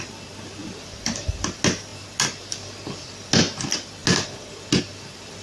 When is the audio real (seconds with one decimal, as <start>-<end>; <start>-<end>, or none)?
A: 0.0-0.6; 1.2-5.4